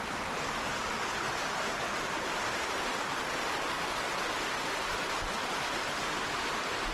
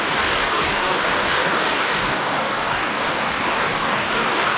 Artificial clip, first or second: second